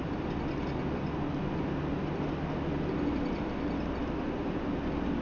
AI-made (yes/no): no